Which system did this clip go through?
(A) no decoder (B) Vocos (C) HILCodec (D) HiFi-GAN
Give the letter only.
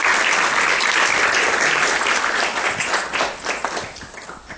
A